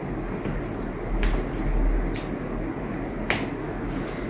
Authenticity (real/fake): real